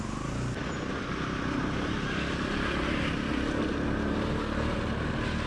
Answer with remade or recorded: recorded